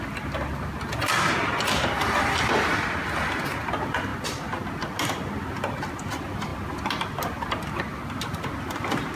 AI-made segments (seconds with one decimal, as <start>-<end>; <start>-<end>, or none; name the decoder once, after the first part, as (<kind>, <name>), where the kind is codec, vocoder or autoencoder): none